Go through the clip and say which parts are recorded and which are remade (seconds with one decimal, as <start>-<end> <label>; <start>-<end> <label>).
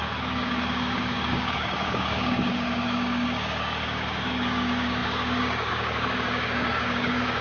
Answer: 0.0-7.4 remade